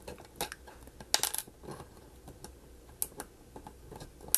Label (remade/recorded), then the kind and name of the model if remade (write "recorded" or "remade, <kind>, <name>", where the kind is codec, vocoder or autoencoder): recorded